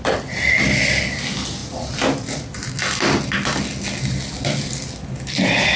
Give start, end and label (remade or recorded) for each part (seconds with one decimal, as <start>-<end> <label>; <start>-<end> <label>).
0.0-5.8 recorded